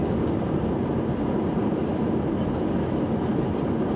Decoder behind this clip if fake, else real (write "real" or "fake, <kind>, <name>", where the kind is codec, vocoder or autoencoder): fake, vocoder, BigVGAN v2